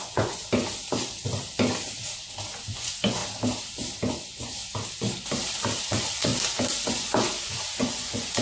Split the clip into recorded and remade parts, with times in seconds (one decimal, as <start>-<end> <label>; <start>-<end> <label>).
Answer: 0.0-0.4 remade; 0.4-2.7 recorded; 2.7-3.2 remade; 3.2-4.1 recorded; 4.1-4.6 remade; 4.6-5.8 recorded; 5.8-6.3 remade; 6.3-6.9 recorded; 6.9-8.4 remade